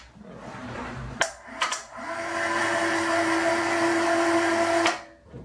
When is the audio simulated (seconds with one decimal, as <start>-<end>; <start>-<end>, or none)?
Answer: 0.6-2.0; 2.6-3.5